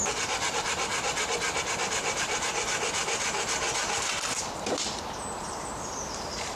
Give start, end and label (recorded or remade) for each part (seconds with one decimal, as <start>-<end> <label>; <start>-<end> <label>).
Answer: 0.0-0.9 remade; 0.9-1.8 recorded; 1.8-2.5 remade; 2.5-3.8 recorded; 3.8-6.6 remade